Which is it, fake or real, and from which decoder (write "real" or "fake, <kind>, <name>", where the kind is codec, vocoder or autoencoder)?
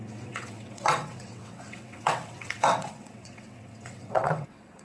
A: fake, vocoder, WaveNeXt